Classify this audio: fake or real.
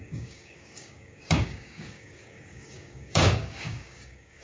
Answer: fake